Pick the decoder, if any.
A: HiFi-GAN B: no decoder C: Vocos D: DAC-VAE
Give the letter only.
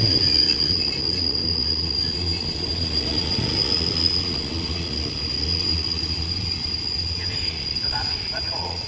C